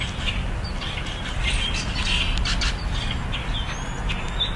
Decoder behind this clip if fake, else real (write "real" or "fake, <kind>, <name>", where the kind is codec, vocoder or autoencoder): real